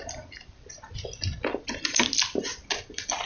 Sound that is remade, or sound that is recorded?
recorded